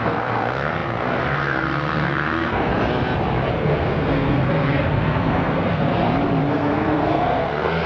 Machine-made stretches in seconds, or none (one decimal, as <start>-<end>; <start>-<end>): 0.0-2.7; 3.5-5.9; 6.5-7.9